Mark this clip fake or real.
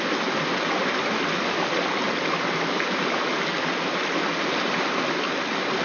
real